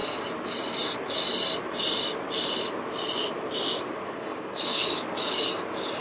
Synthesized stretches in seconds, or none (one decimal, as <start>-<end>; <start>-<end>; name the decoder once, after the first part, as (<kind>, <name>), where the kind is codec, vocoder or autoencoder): 4.7-5.5 (codec, DAC)